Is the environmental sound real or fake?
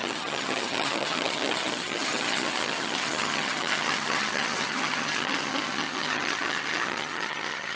fake